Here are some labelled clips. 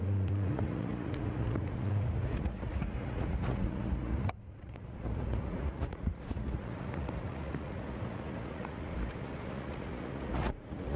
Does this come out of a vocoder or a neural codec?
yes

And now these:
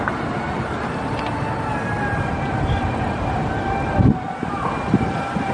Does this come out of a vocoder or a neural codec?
no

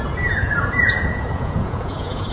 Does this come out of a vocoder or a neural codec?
yes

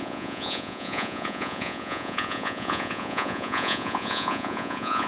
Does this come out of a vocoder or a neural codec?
yes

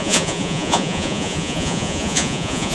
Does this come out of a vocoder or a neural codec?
yes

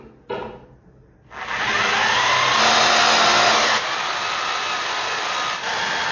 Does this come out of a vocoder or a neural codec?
no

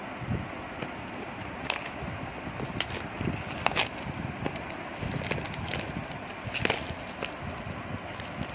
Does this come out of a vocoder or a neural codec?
no